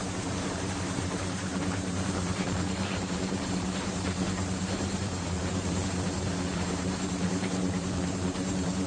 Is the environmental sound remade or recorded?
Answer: remade